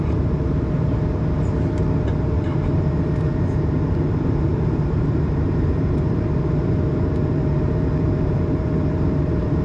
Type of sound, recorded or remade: remade